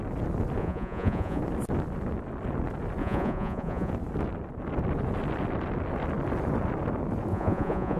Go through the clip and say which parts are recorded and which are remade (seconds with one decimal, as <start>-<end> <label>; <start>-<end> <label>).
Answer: 0.0-0.6 recorded; 0.6-1.4 remade; 1.4-3.0 recorded; 3.0-3.9 remade; 3.9-7.3 recorded; 7.3-8.0 remade